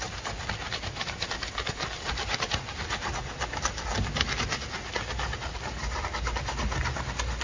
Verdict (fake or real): real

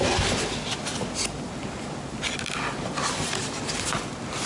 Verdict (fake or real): real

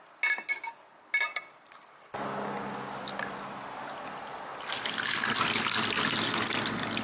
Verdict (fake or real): real